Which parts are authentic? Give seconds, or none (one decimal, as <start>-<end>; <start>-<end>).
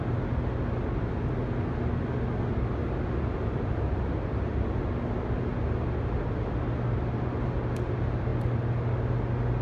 0.0-9.6